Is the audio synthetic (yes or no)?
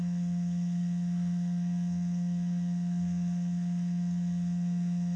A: yes